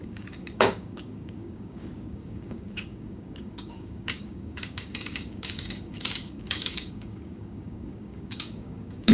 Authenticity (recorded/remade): remade